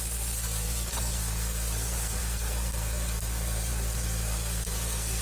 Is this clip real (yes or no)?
no